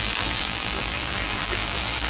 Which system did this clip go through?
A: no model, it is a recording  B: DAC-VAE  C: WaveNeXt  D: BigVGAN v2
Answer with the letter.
D